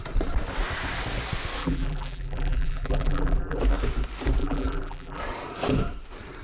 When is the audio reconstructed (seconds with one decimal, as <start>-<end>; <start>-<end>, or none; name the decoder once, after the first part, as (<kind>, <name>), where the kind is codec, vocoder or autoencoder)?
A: 1.6-3.6 (vocoder, BigVGAN v2); 4.4-5.2